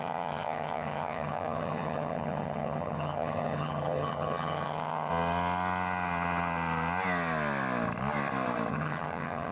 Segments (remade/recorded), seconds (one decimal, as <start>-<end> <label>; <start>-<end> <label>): 0.0-5.1 remade; 5.1-8.7 recorded; 8.7-9.5 remade